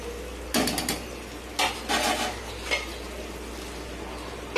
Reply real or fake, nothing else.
real